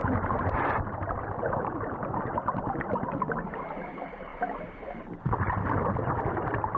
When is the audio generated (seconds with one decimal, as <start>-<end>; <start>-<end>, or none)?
0.0-0.6